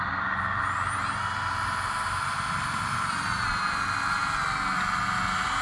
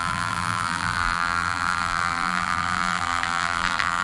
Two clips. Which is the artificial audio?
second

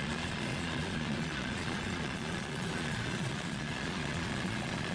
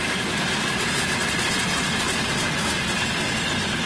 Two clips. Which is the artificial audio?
first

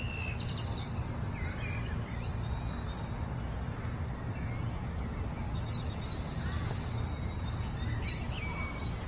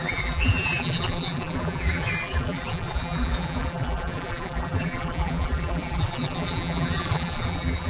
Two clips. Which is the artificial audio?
second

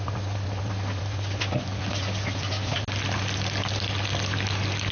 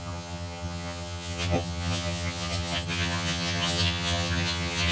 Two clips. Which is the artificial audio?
second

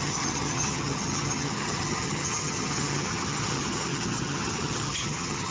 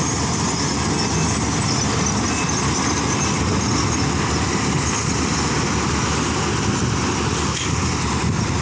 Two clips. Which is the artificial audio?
first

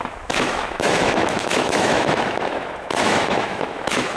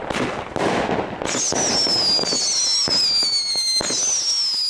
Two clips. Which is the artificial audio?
first